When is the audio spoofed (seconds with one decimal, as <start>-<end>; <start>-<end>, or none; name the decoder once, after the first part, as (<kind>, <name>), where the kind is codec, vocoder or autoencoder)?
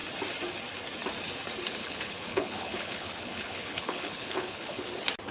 1.8-4.8 (codec, HILCodec)